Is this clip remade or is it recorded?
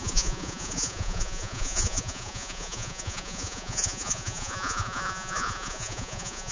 remade